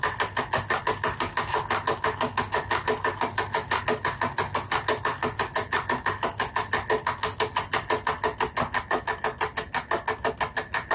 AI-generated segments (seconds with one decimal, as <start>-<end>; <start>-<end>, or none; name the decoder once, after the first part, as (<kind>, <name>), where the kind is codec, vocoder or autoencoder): none